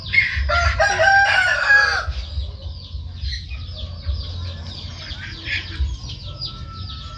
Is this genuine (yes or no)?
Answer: yes